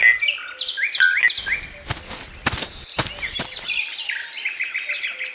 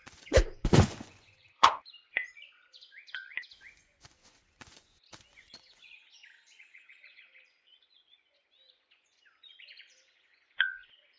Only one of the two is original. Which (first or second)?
first